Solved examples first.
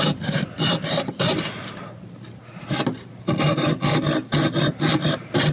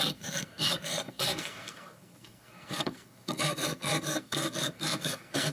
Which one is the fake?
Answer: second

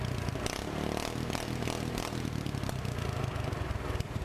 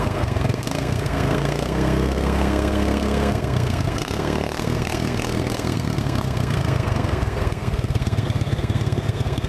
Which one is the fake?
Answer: second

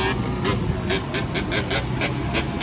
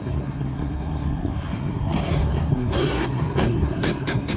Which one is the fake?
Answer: second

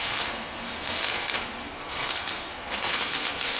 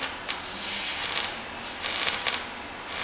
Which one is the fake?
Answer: first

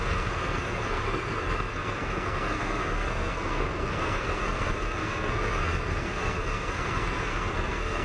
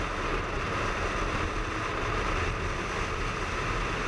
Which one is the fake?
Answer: first